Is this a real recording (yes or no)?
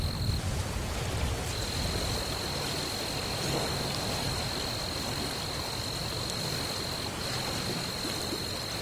yes